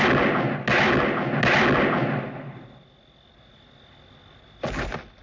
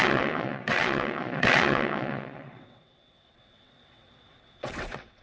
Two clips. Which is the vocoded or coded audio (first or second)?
second